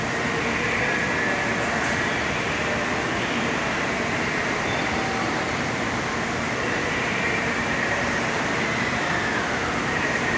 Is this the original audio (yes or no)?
no